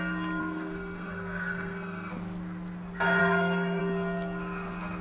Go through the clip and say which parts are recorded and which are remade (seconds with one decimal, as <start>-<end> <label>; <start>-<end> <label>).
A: 0.0-0.4 recorded; 0.4-2.1 remade; 2.1-3.2 recorded; 3.2-3.8 remade; 3.8-5.0 recorded